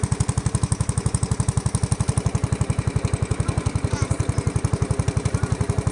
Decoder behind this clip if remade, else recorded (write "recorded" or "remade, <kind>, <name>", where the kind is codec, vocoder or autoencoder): recorded